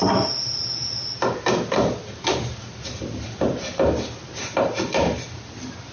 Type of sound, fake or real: real